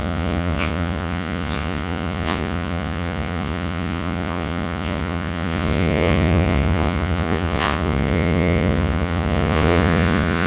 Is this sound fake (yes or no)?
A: yes